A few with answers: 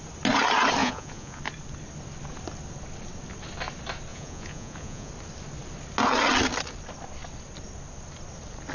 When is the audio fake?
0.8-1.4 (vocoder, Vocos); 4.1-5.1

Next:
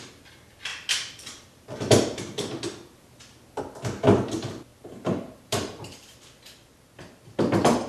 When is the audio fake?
4.7-6.2 (vocoder, BigVGAN v2)

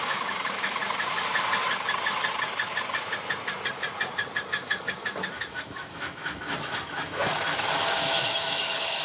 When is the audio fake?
0.0-0.8 (autoencoder, DAC-VAE); 4.5-9.0

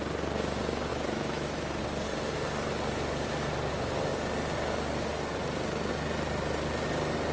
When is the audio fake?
0.9-1.8 (autoencoder, DAC-VAE)

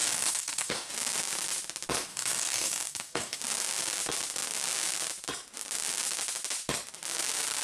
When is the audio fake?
0.0-0.9 (codec, DAC); 2.1-3.4

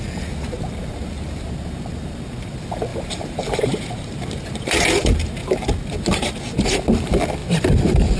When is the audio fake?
2.9-4.9 (vocoder, BigVGAN v2)